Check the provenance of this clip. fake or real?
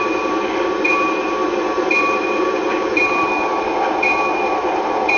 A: fake